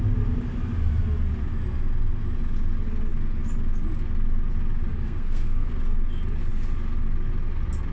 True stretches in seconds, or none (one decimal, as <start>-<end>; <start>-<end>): 0.0-4.9; 5.7-7.9